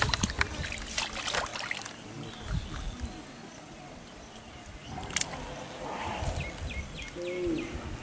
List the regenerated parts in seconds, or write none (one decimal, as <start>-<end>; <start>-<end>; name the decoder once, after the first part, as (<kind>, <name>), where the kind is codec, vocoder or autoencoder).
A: none